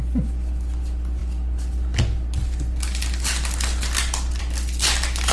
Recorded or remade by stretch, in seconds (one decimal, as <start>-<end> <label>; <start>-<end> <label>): 0.0-5.3 recorded